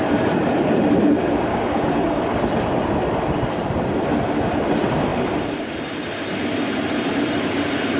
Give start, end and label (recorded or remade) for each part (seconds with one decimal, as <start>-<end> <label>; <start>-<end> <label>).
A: 0.0-1.5 recorded; 1.5-2.2 remade; 2.2-8.0 recorded